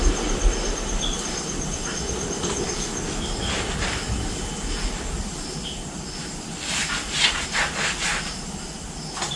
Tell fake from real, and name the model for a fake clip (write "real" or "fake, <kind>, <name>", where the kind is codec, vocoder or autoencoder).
real